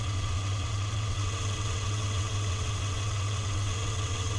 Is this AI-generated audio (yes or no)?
yes